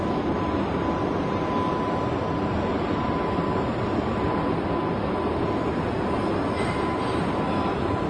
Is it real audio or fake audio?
real